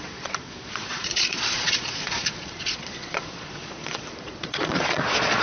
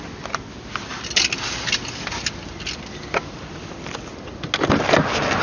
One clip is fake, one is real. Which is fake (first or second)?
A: first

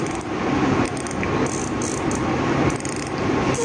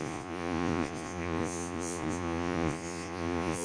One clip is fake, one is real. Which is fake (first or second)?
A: second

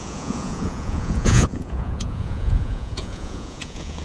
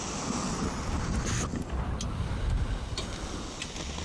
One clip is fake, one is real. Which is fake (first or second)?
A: first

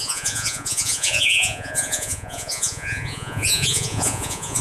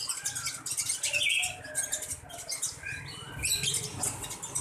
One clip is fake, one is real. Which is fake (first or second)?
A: first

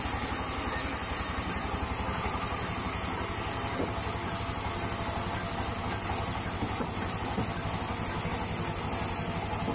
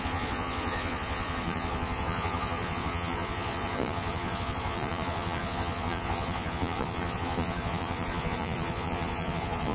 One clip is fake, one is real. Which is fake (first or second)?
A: second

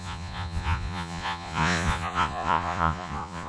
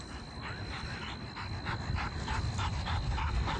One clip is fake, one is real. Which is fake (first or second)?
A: first